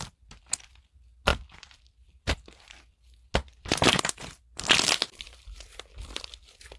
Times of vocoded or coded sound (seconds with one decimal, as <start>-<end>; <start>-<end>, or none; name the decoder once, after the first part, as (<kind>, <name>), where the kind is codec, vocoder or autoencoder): 1.3-2.2 (vocoder, BigVGAN v2); 3.4-6.2